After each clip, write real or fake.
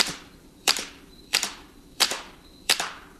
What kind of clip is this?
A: fake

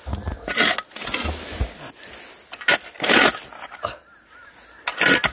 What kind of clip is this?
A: real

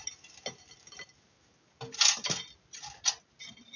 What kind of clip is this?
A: real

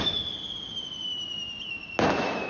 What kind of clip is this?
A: real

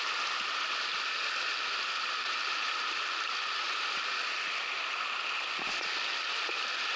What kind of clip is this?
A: real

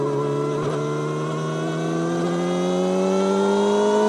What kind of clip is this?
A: real